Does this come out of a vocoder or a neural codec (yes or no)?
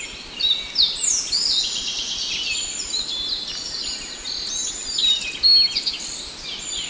no